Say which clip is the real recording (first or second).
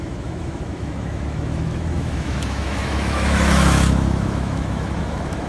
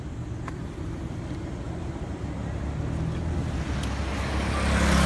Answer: second